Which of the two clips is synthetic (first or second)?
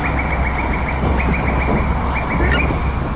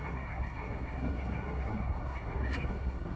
second